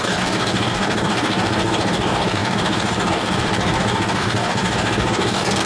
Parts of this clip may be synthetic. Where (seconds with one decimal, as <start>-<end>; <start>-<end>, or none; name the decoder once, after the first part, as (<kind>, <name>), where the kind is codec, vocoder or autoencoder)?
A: 0.0-5.7 (codec, DAC)